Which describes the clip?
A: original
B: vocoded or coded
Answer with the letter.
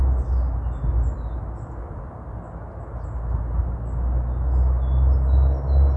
A